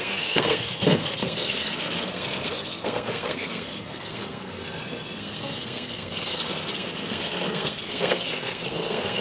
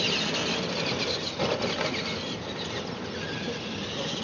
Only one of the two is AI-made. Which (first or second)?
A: first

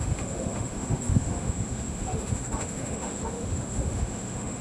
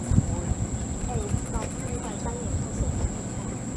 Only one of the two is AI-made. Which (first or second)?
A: first